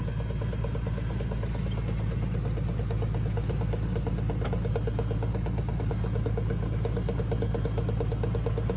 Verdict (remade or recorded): recorded